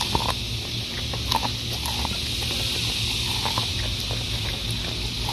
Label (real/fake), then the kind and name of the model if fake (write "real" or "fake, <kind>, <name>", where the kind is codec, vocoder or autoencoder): real